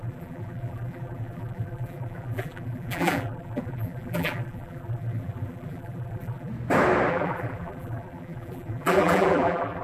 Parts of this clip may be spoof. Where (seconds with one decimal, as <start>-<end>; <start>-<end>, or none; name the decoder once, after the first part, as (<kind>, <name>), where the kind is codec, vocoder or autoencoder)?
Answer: 0.0-6.5 (vocoder, BigVGAN v2); 7.1-9.8